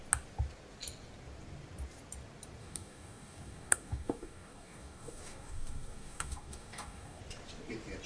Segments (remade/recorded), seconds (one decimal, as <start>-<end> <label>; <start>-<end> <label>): 0.0-2.6 recorded; 2.6-7.2 remade; 7.2-8.1 recorded